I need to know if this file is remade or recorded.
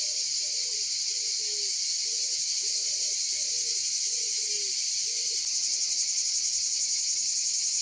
recorded